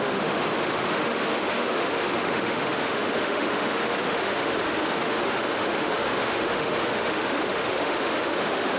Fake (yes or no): yes